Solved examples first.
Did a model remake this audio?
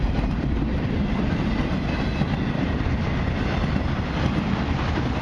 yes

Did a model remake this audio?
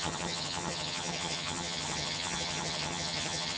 yes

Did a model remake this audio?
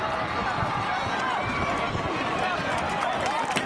no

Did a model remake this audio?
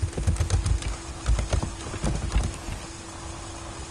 no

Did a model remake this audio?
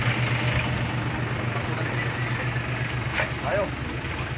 no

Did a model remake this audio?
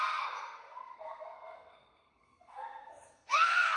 yes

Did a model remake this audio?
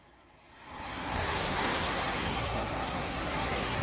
yes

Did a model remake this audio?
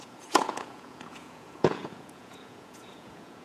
yes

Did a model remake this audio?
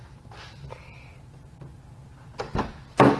no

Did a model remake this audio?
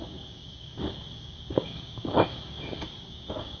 yes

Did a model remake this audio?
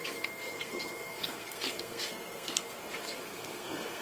yes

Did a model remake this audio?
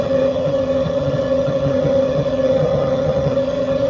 yes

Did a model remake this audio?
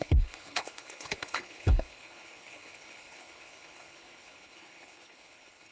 yes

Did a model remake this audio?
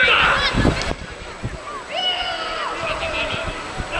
no